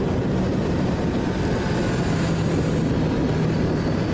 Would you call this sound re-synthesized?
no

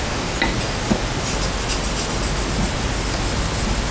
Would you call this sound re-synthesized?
no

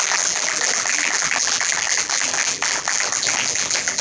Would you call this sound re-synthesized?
yes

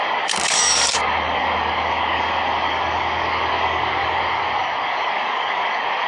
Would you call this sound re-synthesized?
yes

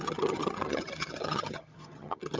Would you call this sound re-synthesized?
yes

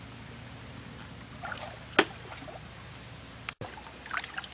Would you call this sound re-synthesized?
no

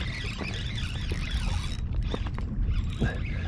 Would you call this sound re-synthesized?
no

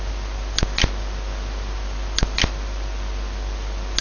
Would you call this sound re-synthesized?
no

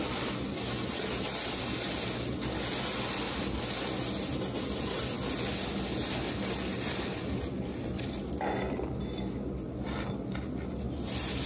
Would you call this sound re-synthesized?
no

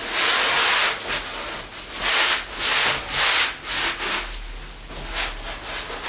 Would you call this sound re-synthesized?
no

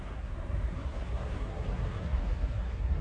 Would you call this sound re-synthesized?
yes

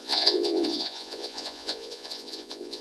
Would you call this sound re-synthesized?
yes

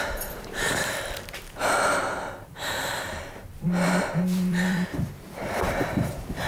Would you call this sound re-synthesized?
yes